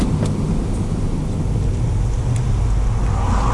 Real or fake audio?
real